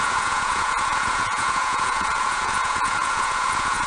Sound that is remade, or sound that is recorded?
remade